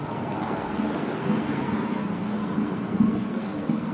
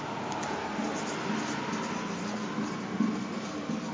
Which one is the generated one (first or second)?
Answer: first